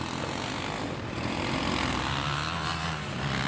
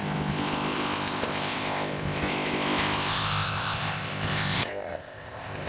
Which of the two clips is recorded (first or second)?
first